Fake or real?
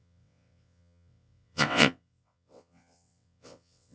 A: fake